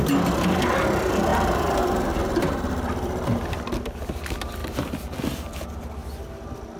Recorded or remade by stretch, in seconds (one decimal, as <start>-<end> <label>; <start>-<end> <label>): 0.0-1.3 recorded; 1.3-3.6 remade; 3.6-6.8 recorded